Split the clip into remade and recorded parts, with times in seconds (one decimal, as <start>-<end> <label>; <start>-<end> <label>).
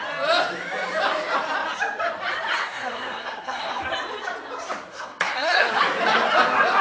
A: 0.0-2.6 recorded; 2.6-3.8 remade; 3.8-4.9 recorded; 4.9-5.8 remade; 5.8-6.8 recorded